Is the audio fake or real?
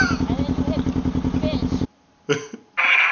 real